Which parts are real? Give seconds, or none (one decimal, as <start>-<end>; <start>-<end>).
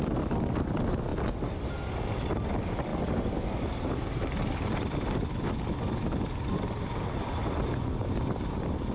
1.1-2.0